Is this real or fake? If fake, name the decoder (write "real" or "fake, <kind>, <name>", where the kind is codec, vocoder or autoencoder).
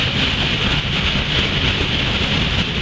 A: real